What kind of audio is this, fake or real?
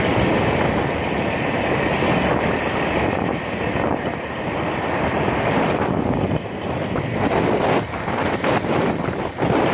fake